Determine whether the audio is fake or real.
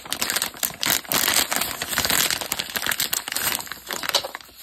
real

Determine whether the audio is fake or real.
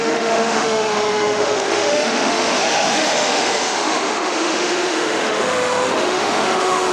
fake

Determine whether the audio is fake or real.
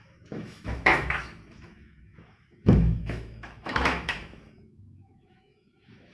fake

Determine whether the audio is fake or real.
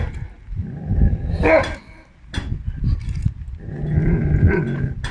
real